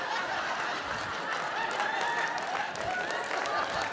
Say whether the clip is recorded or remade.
recorded